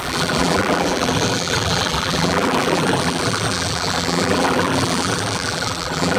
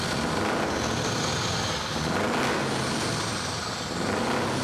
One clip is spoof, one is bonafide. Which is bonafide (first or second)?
second